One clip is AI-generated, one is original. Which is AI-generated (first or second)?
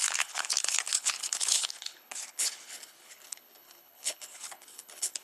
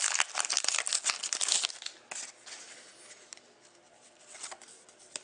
first